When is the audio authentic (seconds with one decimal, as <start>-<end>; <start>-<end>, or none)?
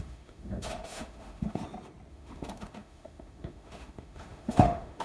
1.6-2.1